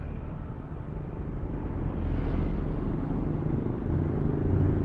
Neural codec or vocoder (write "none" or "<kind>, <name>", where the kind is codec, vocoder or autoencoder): none